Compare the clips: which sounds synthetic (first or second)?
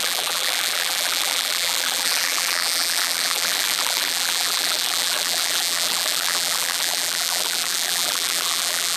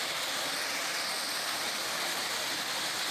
first